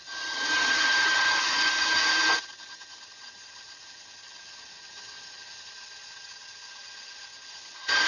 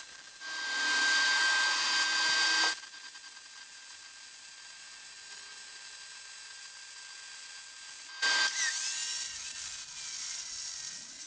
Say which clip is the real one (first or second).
second